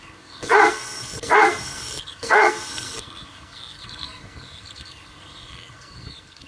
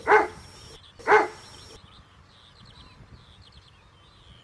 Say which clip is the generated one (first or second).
first